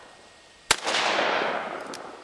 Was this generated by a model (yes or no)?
no